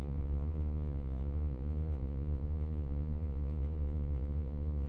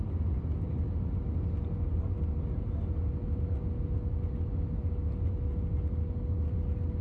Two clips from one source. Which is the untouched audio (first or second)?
second